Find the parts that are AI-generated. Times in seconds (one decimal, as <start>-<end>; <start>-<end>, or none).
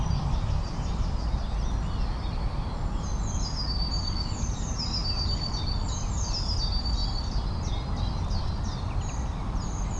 none